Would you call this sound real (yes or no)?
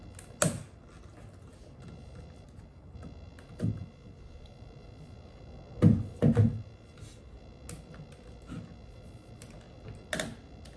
yes